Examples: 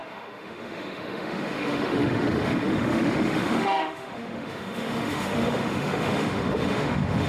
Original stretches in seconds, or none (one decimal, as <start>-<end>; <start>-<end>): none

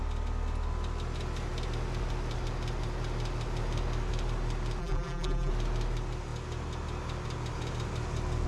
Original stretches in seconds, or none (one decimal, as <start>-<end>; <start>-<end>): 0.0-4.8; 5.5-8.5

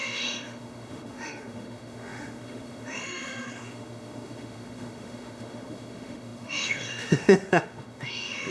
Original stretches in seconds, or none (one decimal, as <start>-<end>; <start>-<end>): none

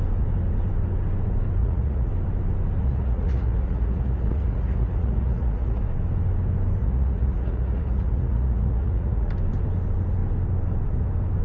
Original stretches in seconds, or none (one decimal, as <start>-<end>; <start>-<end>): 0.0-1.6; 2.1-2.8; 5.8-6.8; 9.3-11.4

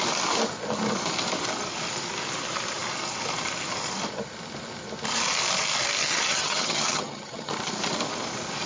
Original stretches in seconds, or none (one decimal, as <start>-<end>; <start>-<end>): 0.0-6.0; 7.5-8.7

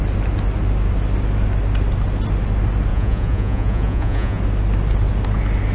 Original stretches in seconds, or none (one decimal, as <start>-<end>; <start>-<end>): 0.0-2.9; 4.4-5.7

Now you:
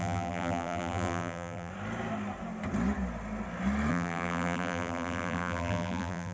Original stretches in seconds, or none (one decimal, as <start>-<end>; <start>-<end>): 1.7-3.9